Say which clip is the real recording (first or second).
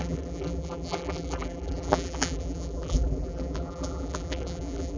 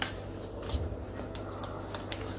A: second